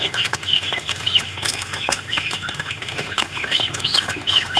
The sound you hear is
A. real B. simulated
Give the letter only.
B